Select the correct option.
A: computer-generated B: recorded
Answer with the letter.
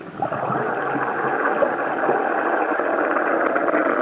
B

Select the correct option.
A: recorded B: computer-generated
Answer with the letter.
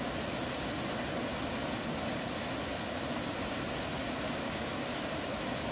A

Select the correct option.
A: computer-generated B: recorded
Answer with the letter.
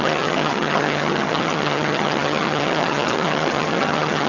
A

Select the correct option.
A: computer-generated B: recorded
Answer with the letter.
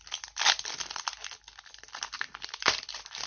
B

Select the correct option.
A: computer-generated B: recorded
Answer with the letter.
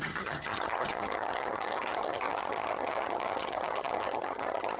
A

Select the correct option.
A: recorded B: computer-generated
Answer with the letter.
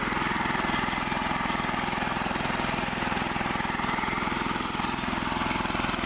A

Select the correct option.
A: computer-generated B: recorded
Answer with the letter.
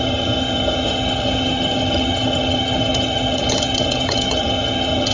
A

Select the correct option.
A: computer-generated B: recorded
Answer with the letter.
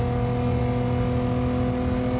B